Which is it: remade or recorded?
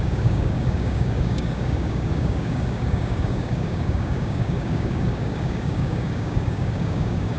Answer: remade